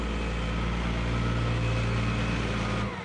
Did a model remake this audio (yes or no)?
no